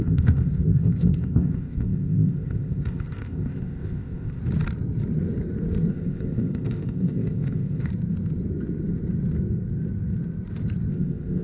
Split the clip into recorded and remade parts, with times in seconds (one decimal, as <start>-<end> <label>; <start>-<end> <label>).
0.0-4.4 remade; 4.4-5.9 recorded; 5.9-7.9 remade; 7.9-10.9 recorded; 10.9-11.4 remade